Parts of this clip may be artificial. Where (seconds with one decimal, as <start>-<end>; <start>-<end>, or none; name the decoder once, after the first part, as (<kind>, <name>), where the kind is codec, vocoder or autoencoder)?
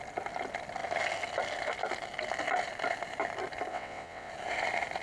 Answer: 3.7-4.3 (vocoder, WaveNeXt)